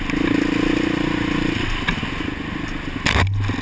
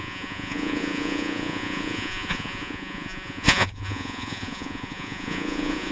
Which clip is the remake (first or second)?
second